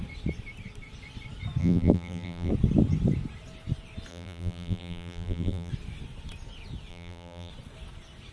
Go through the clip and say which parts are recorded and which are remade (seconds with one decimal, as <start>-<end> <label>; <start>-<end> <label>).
0.0-1.6 recorded; 1.6-2.5 remade; 2.5-4.1 recorded; 4.1-5.7 remade; 5.7-6.9 recorded; 6.9-7.5 remade; 7.5-8.3 recorded